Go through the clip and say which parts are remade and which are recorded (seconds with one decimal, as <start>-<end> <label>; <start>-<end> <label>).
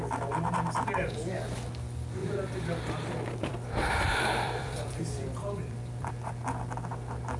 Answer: 0.0-2.2 recorded; 2.2-6.1 remade; 6.1-7.4 recorded